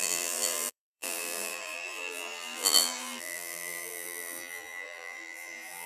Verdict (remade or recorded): remade